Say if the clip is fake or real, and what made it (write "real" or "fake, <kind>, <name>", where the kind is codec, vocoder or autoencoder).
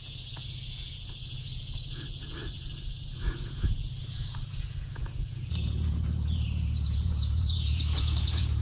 fake, vocoder, Vocos